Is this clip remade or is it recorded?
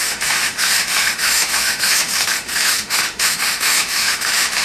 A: remade